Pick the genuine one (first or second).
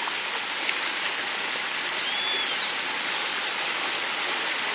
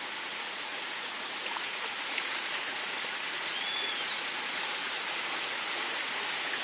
first